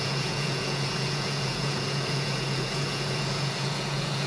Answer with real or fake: fake